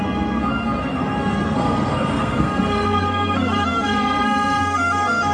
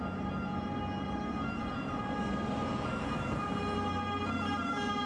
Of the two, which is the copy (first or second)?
first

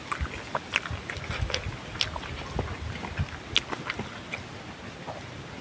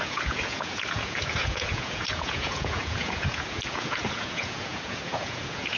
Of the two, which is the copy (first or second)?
second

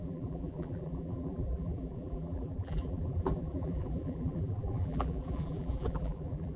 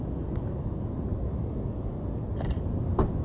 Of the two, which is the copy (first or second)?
first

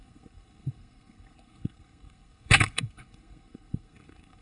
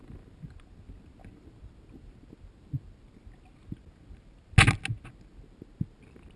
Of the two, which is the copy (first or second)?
first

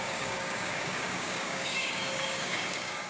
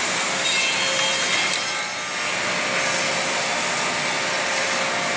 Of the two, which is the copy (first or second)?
first